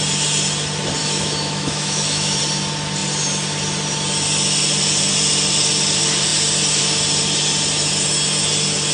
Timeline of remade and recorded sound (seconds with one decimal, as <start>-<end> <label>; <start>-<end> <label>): 0.0-1.0 recorded; 1.0-2.4 remade; 2.4-8.9 recorded